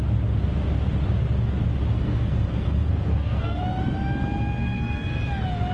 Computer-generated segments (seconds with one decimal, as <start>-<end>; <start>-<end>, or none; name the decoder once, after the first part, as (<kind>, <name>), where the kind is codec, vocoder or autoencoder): 1.9-3.6 (codec, SNAC); 4.6-5.2